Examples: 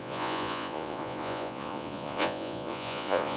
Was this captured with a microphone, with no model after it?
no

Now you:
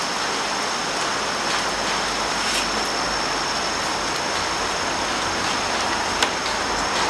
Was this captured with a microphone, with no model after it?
yes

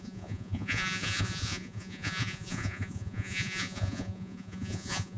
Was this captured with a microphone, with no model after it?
no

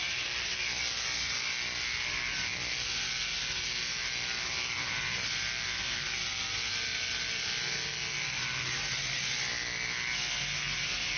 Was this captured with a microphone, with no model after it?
yes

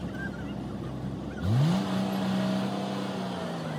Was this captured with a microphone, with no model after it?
yes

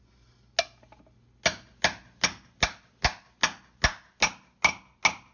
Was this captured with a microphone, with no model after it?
yes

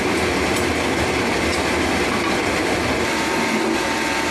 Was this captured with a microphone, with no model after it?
yes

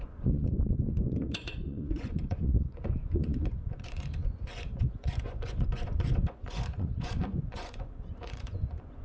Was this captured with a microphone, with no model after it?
no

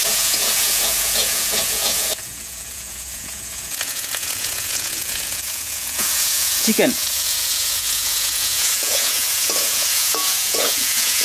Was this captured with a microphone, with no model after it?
no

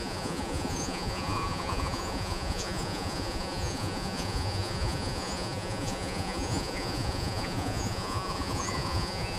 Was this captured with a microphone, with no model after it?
no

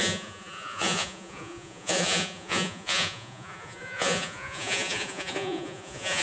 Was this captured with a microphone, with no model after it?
no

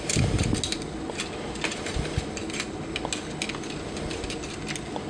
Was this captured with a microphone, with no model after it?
yes